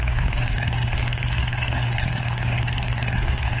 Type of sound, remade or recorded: remade